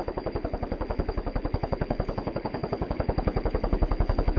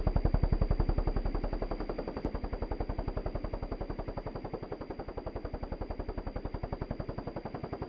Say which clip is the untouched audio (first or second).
second